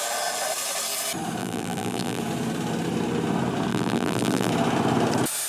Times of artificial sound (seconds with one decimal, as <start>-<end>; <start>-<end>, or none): 1.4-2.2; 3.7-4.5